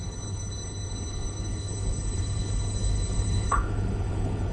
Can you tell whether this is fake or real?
fake